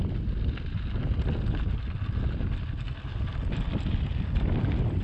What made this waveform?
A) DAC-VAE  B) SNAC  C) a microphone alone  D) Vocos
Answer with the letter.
C